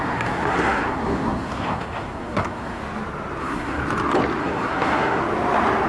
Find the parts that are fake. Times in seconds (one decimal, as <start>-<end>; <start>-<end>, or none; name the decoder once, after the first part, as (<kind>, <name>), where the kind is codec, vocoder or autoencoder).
0.0-2.8 (codec, SNAC); 3.4-3.8; 4.4-5.2